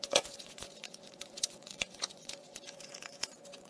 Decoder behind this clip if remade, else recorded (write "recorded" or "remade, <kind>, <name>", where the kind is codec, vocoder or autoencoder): remade, vocoder, Vocos